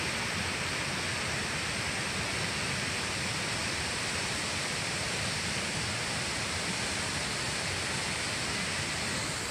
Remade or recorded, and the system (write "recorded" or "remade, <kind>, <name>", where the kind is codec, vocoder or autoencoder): recorded